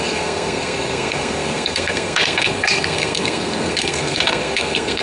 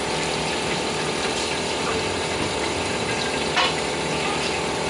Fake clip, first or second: first